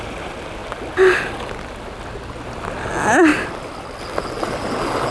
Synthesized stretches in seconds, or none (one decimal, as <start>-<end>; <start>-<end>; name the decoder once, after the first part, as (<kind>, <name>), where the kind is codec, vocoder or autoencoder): none